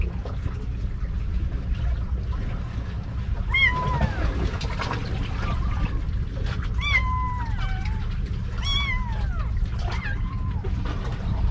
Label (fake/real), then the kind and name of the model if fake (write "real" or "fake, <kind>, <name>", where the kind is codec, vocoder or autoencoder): real